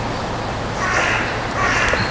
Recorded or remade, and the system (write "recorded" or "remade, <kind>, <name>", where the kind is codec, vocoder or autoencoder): remade, vocoder, BigVGAN v2